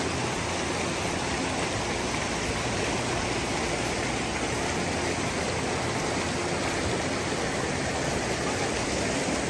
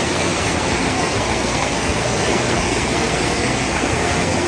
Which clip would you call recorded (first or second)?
first